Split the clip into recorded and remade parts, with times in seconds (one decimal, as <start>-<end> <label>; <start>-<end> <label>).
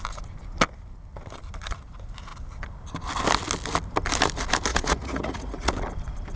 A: 0.0-4.7 recorded; 4.7-5.7 remade; 5.7-6.4 recorded